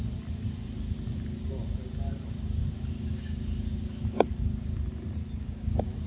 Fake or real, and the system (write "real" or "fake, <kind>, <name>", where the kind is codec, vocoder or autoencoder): real